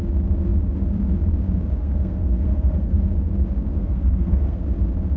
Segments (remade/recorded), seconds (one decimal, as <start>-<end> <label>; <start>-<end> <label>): 0.0-1.8 recorded; 1.8-3.0 remade; 3.0-3.7 recorded; 3.7-4.6 remade; 4.6-5.2 recorded